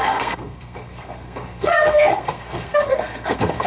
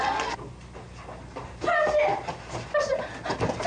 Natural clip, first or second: second